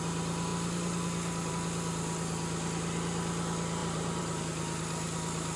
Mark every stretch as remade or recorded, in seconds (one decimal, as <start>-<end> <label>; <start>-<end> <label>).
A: 0.0-3.8 recorded; 3.8-4.4 remade; 4.4-5.6 recorded